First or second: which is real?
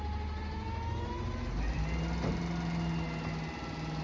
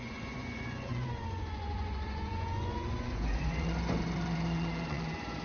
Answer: first